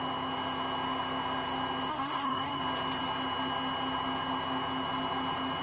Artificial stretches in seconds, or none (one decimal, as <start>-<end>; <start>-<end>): 1.9-2.6